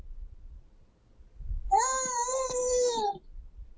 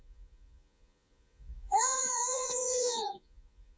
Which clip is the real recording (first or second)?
first